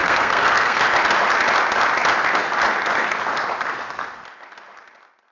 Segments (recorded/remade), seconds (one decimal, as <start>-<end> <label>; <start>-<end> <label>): 0.0-0.8 remade; 0.8-5.3 recorded